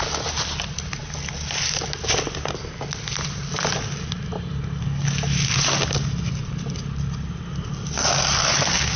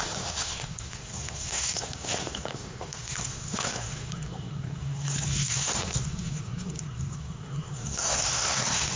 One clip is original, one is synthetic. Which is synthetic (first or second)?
second